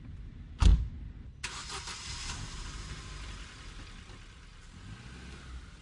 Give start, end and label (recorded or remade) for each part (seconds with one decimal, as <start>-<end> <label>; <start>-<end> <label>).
0.0-5.8 recorded